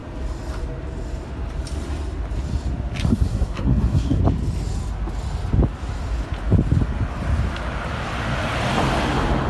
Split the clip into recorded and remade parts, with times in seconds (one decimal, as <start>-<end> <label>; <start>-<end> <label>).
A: 0.0-3.1 recorded; 3.1-4.2 remade; 4.2-9.5 recorded